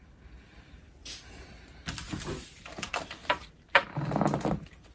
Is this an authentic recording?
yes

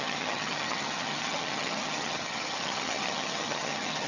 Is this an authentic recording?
no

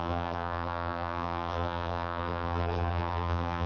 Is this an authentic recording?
no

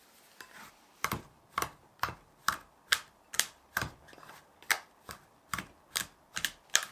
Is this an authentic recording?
no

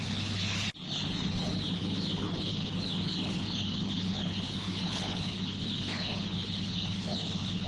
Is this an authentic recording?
no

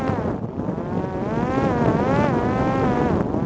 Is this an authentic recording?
yes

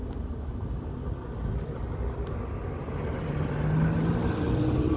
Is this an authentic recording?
yes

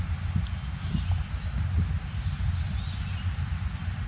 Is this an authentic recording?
yes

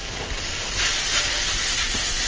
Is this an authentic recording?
yes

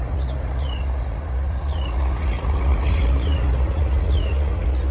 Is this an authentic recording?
no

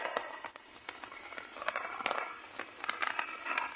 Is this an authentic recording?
yes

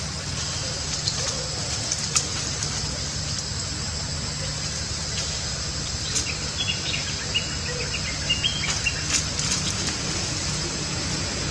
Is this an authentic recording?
yes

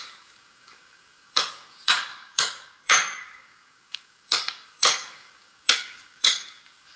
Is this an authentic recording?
no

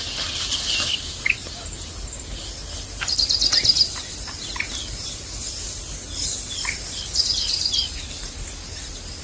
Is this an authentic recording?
yes